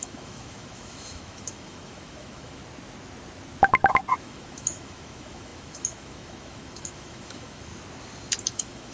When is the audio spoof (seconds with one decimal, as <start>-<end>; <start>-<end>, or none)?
0.0-2.6; 4.2-7.7; 8.4-8.9